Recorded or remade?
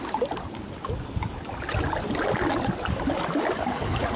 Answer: recorded